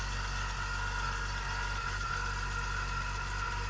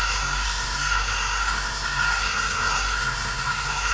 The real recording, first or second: first